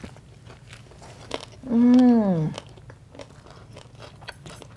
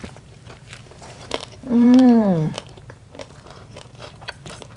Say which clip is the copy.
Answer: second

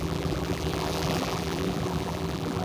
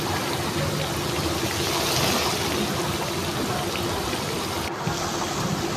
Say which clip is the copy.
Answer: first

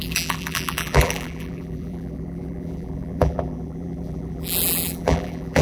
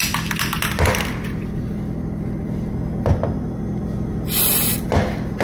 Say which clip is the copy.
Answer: first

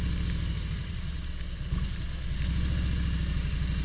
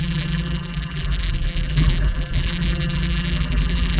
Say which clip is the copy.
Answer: second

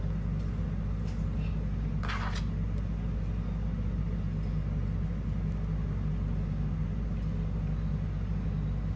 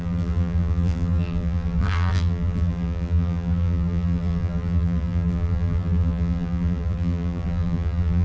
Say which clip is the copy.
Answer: second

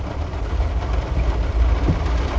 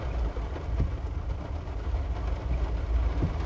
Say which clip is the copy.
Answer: first